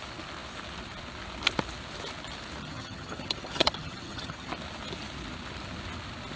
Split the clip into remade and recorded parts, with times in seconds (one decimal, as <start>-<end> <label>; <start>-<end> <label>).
0.0-2.6 recorded; 2.6-4.5 remade; 4.5-6.4 recorded